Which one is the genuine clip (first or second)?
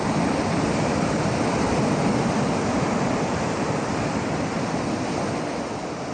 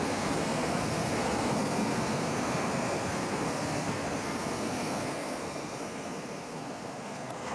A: first